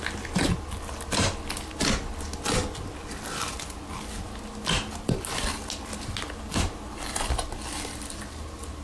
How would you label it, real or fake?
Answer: real